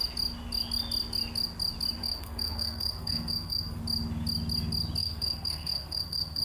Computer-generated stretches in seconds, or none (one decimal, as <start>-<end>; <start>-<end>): 2.0-3.8; 5.0-6.4